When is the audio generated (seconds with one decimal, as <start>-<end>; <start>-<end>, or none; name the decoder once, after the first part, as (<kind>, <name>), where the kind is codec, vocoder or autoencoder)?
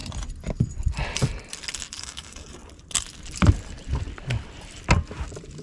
2.0-2.6 (codec, DAC)